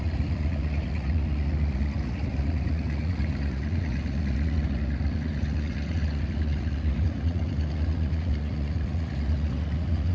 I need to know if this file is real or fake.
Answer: fake